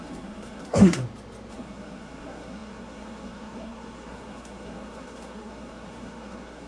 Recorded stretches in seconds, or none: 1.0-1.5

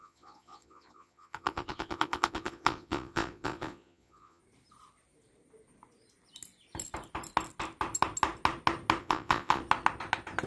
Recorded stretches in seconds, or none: 4.4-9.0; 9.6-10.5